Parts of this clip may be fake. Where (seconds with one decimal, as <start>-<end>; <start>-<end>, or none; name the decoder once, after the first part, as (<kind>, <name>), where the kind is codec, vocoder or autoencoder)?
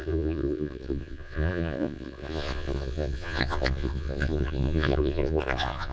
0.0-5.9 (vocoder, Vocos)